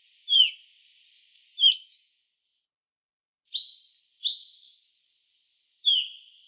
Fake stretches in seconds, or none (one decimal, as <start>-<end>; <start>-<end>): 1.5-2.1